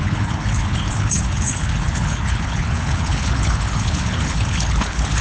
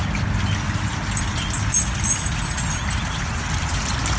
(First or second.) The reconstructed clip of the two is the first